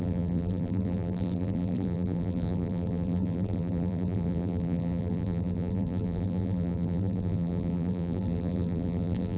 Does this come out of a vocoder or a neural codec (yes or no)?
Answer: yes